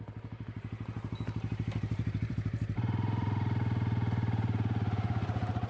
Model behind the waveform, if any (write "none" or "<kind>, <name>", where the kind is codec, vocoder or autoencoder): vocoder, BigVGAN v2